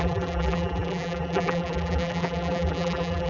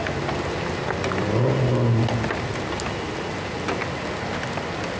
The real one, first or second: second